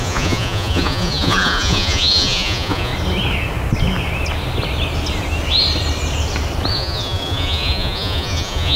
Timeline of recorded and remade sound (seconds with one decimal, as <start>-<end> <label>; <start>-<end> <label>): 0.0-2.9 remade; 2.9-6.7 recorded; 6.7-8.8 remade

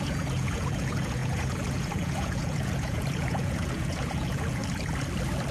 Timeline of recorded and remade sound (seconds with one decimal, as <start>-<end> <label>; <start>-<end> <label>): 0.0-4.6 remade; 4.6-5.5 recorded

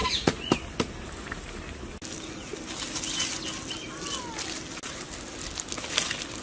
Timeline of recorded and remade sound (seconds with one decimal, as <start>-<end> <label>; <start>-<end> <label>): 0.0-0.5 remade; 0.5-6.4 recorded

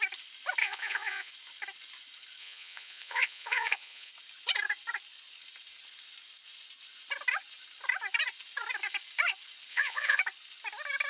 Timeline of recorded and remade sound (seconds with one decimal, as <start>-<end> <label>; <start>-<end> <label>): 0.0-0.6 recorded; 0.6-1.3 remade; 1.3-2.4 recorded; 2.4-4.1 remade; 4.1-9.7 recorded; 9.7-10.2 remade; 10.2-11.1 recorded

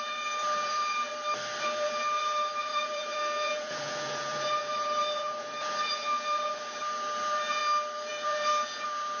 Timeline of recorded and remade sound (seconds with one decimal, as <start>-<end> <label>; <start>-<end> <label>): 0.0-1.1 remade; 1.1-1.6 recorded; 1.6-7.6 remade; 7.6-8.1 recorded; 8.1-9.2 remade

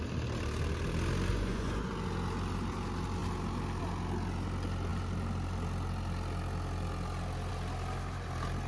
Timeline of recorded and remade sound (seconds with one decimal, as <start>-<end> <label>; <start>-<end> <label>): 0.0-1.3 recorded; 1.3-1.9 remade; 1.9-8.7 recorded